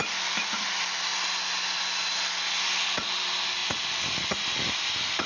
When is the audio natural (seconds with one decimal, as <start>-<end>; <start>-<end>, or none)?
0.0-5.3